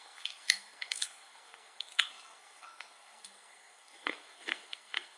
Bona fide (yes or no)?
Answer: no